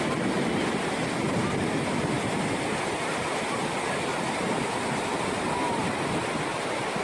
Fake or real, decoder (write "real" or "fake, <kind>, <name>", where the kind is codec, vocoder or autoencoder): real